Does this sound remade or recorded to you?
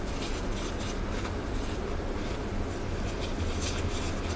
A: recorded